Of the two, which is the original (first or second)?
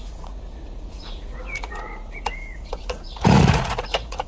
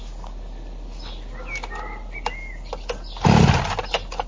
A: second